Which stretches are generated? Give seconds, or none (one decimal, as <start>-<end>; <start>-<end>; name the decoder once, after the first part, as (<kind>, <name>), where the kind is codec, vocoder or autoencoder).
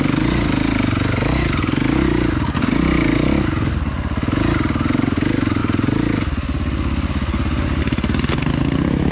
none